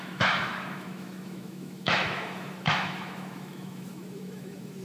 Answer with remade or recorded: remade